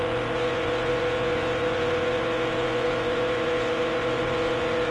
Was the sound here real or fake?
fake